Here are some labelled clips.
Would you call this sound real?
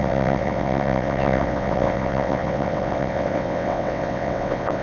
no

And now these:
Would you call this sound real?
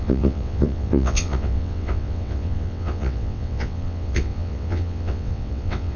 no